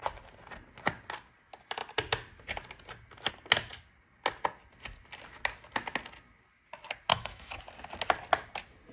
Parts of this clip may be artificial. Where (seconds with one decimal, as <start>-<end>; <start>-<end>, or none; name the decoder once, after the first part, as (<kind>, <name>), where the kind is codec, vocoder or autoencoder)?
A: 7.1-7.6 (autoencoder, DAC-VAE)